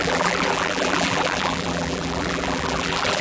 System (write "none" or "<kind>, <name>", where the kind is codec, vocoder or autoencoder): vocoder, BigVGAN v2